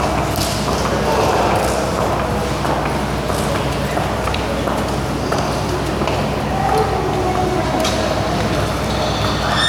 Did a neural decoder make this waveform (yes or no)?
no